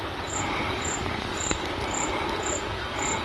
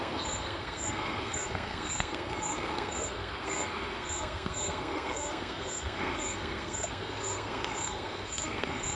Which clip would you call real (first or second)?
first